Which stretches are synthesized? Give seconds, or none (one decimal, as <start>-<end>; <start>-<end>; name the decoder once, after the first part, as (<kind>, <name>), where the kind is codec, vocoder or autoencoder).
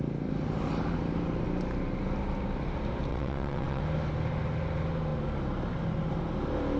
3.1-3.8 (vocoder, WaveNeXt)